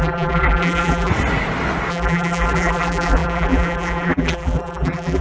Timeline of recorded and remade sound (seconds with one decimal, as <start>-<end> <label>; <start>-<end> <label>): 0.0-1.1 remade; 1.1-1.9 recorded; 1.9-5.2 remade